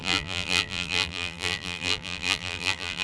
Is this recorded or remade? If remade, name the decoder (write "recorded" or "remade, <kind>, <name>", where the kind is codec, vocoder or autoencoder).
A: remade, vocoder, BigVGAN v2